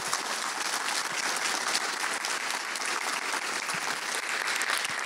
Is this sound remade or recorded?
recorded